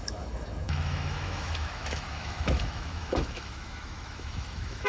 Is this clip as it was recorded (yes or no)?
no